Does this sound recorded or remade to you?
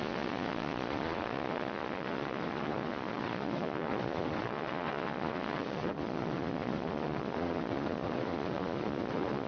remade